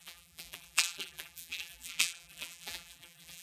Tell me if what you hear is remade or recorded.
remade